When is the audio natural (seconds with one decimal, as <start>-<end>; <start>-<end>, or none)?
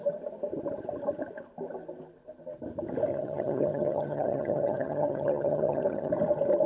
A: 0.0-3.1; 6.1-6.7